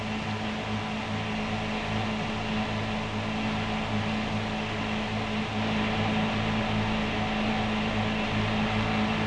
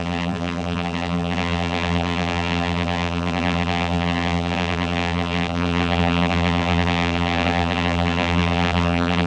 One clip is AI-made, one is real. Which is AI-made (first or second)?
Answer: second